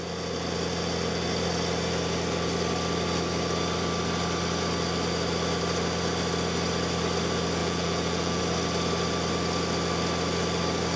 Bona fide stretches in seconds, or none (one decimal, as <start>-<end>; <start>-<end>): 0.0-7.6; 8.4-11.0

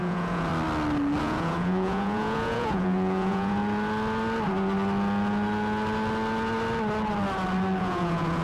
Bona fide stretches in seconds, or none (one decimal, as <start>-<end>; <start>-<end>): 0.5-1.2; 3.6-7.8